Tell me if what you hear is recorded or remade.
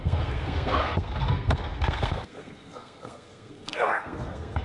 remade